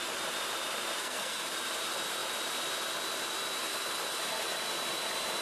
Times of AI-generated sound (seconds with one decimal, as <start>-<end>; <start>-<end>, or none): 1.0-1.5